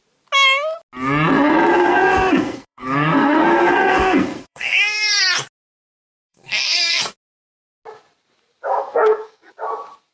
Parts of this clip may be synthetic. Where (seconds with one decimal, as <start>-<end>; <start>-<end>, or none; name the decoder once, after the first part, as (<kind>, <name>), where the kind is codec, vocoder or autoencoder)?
1.8-5.2 (codec, SNAC); 6.3-7.0; 8.7-9.5